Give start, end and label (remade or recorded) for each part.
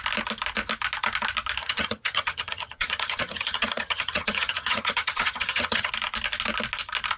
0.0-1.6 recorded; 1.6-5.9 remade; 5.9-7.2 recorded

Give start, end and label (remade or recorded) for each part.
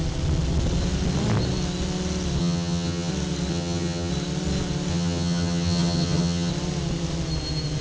0.0-2.4 recorded; 2.4-3.1 remade; 3.1-3.5 recorded; 3.5-4.1 remade; 4.1-4.9 recorded; 4.9-6.5 remade; 6.5-7.8 recorded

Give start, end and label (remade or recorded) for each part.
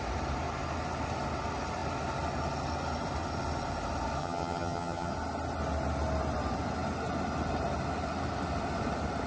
0.0-4.2 recorded; 4.2-5.1 remade; 5.1-9.3 recorded